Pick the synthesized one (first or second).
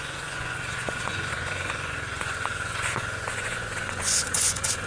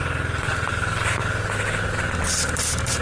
first